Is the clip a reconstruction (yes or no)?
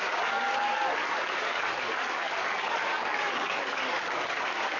yes